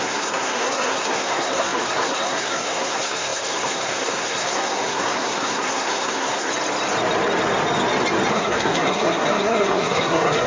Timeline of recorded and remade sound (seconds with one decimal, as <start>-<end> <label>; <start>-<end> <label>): 0.0-6.5 remade; 6.5-8.3 recorded; 8.3-10.5 remade